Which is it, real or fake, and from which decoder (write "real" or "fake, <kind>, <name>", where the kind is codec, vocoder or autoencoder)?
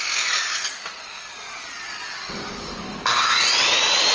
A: real